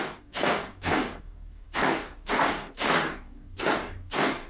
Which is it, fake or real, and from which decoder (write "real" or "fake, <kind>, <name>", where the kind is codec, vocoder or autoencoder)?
fake, codec, DAC